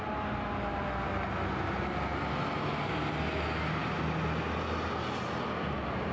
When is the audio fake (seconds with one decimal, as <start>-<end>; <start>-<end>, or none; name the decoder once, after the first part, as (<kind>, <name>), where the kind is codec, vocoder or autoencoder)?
none